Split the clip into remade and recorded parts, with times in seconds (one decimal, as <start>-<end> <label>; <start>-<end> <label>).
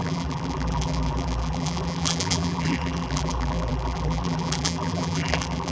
0.0-5.7 remade